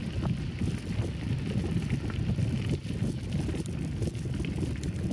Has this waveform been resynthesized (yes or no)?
yes